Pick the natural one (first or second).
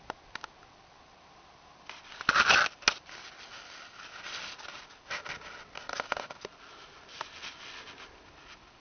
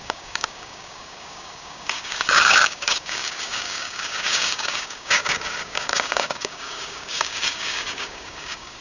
first